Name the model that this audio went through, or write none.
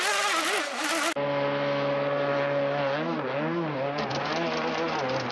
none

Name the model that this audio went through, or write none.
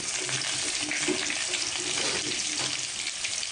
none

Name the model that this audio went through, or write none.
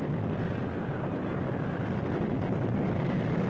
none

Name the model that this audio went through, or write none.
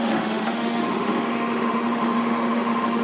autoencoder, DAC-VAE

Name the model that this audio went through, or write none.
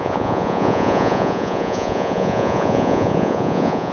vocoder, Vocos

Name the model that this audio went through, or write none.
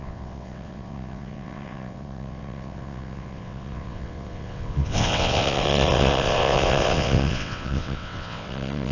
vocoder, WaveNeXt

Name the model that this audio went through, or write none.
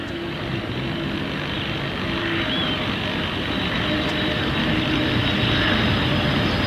none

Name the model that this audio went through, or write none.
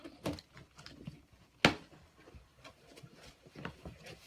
none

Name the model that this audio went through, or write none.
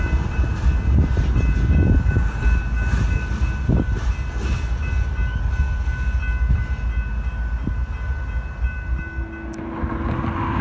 none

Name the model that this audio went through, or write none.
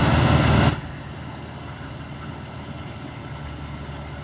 none